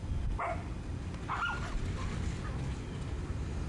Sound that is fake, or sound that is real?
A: real